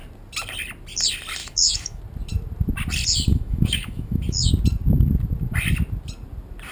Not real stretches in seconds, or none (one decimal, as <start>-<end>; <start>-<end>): 1.4-2.0; 3.3-4.5